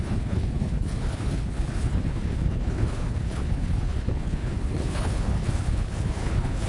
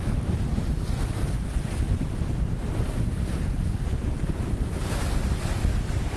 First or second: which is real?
second